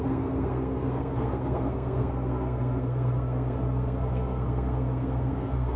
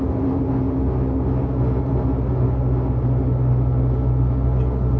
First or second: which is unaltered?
second